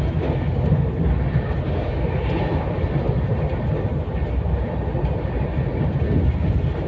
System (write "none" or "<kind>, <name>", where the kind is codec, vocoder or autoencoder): none